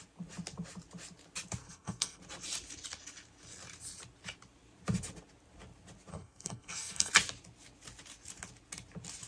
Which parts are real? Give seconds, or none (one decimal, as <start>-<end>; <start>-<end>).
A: 0.0-1.6; 2.2-6.1; 7.1-9.3